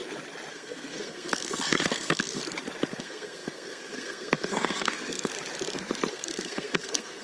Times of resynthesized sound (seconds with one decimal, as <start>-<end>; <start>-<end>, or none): 0.5-2.4; 3.0-5.3; 6.1-7.2